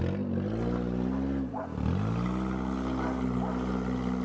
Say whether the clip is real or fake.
real